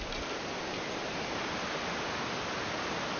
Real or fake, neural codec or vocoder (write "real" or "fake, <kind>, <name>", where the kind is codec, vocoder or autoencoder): real